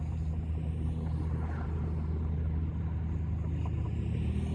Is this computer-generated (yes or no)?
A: no